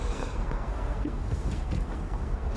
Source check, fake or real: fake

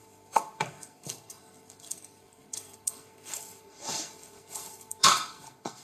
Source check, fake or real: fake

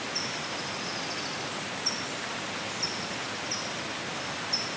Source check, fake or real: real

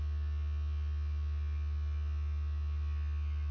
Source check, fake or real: real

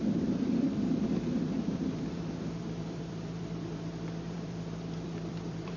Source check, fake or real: fake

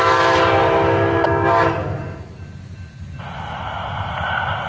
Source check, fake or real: real